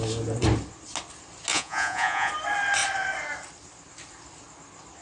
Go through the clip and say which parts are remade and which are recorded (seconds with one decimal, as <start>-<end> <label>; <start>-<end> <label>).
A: 0.0-1.5 recorded; 1.5-2.3 remade; 2.3-5.0 recorded